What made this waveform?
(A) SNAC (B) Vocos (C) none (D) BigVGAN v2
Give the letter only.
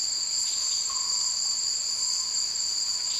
C